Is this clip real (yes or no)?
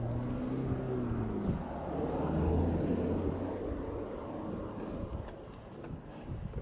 yes